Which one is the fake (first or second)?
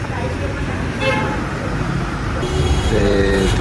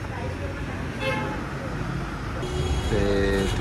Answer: first